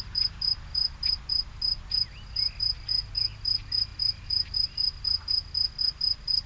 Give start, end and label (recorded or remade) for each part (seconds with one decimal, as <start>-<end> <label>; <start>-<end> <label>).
0.0-6.5 recorded